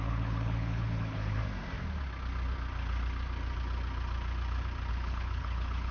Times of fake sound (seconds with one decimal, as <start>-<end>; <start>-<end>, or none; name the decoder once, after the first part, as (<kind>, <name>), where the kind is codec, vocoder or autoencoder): 0.0-1.4 (codec, HILCodec); 4.9-5.9